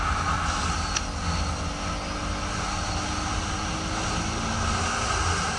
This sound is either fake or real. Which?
real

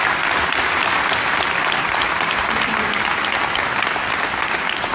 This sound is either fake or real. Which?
real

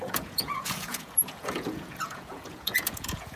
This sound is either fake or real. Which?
fake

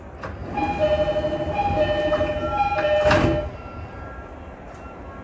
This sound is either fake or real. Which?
real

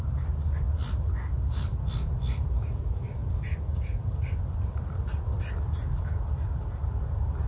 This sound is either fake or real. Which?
real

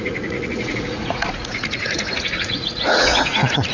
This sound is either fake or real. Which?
fake